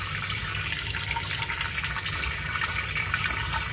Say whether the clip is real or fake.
real